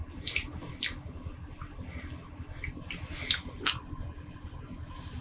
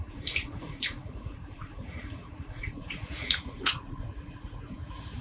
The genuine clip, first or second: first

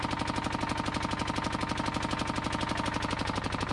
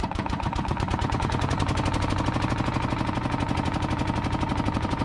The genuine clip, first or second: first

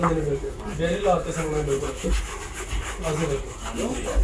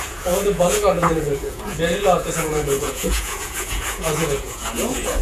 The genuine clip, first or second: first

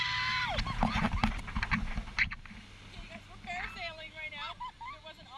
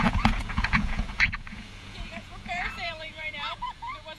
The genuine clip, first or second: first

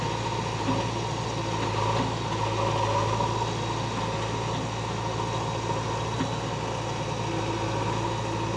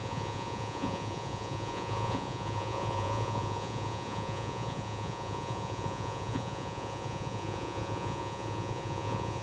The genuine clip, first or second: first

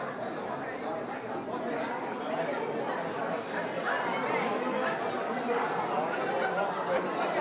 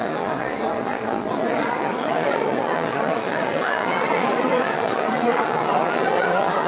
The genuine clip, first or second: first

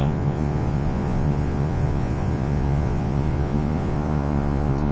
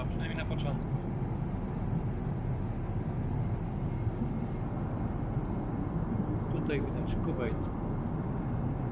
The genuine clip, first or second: second